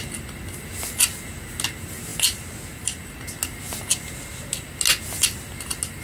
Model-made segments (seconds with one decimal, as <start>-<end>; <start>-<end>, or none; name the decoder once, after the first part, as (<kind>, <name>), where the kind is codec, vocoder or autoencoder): 2.1-3.1 (vocoder, BigVGAN v2)

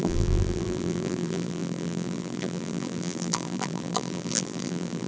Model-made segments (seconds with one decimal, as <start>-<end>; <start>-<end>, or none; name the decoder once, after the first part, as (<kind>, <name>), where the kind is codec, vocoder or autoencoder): 0.0-5.1 (vocoder, BigVGAN v2)

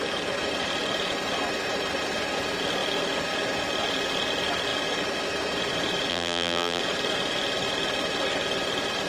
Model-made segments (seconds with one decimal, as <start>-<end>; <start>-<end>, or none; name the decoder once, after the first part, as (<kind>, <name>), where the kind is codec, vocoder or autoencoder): 6.1-6.8 (vocoder, BigVGAN v2)

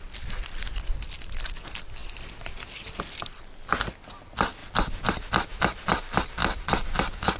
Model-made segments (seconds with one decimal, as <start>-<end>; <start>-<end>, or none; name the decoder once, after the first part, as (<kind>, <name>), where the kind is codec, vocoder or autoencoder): 4.6-6.0 (vocoder, BigVGAN v2)

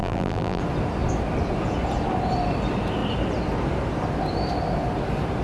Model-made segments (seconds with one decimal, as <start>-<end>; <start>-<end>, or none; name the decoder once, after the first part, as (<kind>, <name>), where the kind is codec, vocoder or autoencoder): 0.0-0.6 (vocoder, BigVGAN v2)

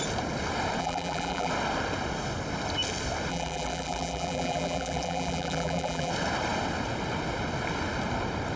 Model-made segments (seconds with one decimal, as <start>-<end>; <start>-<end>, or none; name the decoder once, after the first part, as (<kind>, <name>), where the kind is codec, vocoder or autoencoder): 0.8-1.5 (vocoder, BigVGAN v2); 3.3-6.1

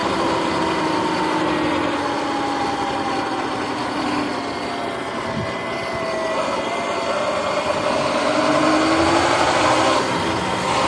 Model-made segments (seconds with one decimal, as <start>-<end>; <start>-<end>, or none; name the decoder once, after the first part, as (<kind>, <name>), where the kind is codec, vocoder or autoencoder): none